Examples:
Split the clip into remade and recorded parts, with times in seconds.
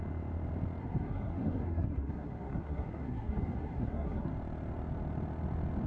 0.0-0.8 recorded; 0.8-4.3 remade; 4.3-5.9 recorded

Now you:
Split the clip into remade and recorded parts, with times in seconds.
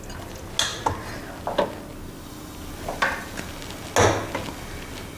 0.0-5.2 recorded